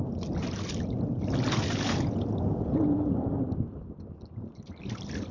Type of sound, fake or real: real